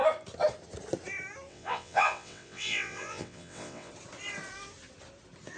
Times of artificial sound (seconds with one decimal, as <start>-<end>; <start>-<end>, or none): 1.5-3.9